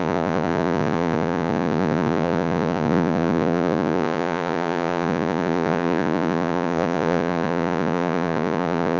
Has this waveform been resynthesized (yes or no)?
yes